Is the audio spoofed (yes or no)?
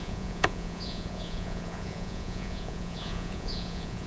yes